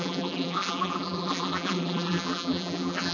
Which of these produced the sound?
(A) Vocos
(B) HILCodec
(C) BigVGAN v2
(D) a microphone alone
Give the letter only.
C